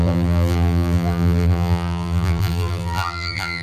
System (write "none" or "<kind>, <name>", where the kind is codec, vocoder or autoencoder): vocoder, BigVGAN v2